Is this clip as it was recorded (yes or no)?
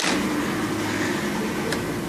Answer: yes